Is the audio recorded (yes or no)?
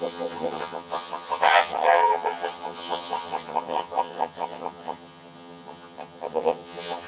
no